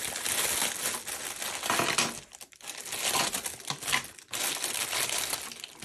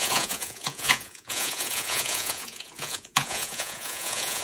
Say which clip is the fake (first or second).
second